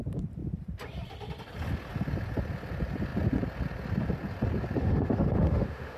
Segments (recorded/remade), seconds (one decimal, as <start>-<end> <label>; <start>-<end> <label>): 0.0-4.8 recorded; 4.8-6.0 remade